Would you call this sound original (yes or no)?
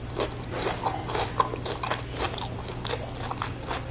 yes